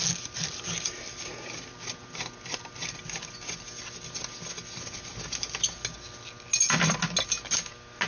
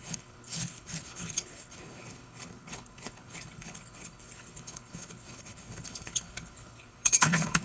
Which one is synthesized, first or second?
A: second